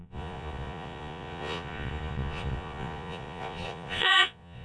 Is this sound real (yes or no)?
no